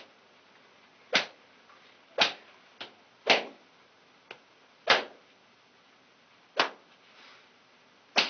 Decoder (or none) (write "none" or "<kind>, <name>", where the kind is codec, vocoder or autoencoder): none